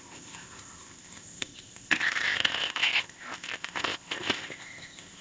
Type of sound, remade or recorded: remade